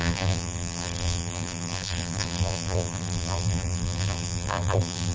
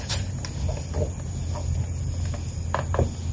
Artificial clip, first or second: first